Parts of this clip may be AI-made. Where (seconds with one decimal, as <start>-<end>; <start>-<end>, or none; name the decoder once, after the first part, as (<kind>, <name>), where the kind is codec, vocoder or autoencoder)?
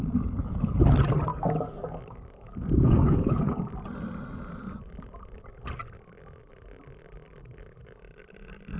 1.3-3.6 (codec, DAC)